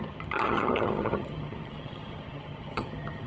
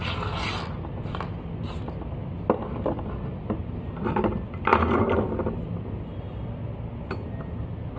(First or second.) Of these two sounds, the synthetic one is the first